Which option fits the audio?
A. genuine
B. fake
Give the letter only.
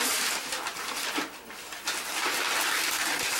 A